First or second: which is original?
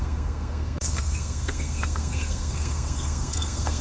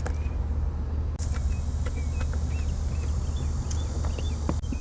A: second